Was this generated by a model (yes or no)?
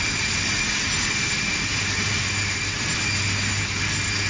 no